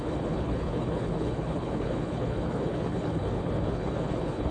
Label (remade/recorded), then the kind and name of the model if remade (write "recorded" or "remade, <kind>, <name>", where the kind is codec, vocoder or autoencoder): remade, codec, HILCodec